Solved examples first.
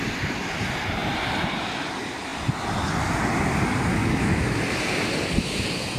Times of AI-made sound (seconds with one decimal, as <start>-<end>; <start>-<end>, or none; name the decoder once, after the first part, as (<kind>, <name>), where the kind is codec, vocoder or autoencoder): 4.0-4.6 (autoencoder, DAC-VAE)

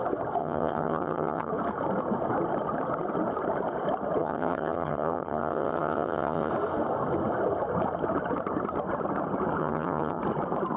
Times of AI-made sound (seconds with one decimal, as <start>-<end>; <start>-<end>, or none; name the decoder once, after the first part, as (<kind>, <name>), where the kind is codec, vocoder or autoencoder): 0.4-1.5 (vocoder, HiFi-GAN); 4.2-6.5; 9.6-10.2

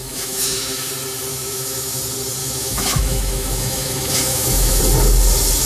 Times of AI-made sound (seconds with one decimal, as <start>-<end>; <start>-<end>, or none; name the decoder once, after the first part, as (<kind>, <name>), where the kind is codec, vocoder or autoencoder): 0.0-0.9 (autoencoder, DAC-VAE); 1.3-2.0; 2.4-4.8

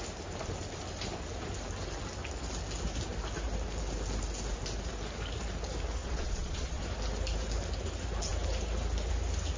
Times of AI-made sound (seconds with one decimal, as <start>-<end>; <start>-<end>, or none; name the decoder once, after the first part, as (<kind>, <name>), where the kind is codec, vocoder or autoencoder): 6.0-6.8 (vocoder, Vocos)

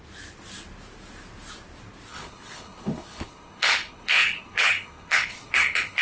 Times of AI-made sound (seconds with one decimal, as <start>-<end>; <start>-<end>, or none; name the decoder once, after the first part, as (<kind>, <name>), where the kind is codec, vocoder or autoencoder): 2.1-6.0 (codec, HILCodec)

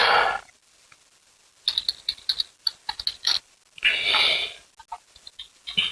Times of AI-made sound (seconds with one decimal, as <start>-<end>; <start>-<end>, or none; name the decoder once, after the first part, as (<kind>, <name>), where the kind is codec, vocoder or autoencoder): none

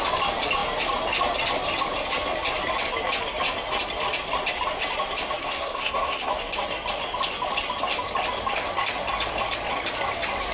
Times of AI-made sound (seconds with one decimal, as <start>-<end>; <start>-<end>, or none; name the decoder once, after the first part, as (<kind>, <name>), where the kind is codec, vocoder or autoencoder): 5.4-6.3 (codec, SNAC)